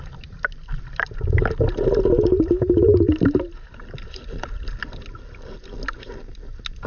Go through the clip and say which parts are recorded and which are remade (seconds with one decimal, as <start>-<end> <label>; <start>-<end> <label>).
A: 0.0-6.9 recorded